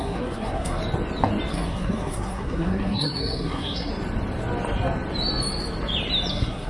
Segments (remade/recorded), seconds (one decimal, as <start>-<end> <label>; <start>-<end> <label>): 0.0-0.8 remade; 0.8-1.5 recorded; 1.5-3.9 remade; 3.9-6.3 recorded; 6.3-6.7 remade